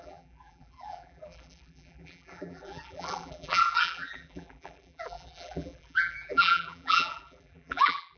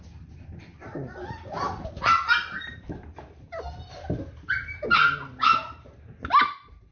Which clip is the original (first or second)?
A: second